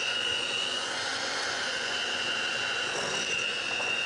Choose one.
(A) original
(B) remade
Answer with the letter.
B